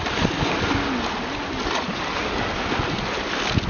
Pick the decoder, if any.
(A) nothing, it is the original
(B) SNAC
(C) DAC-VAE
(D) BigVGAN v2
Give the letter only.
A